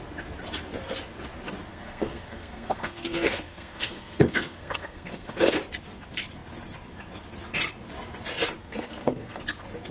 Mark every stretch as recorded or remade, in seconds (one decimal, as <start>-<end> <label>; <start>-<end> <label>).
0.0-1.7 recorded; 1.7-5.6 remade; 5.6-8.6 recorded; 8.6-9.4 remade; 9.4-9.9 recorded